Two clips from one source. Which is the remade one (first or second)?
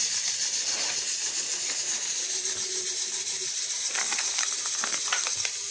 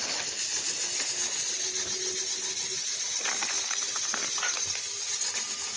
first